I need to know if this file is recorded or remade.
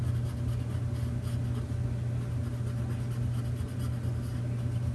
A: recorded